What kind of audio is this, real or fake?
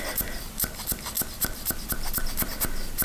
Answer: real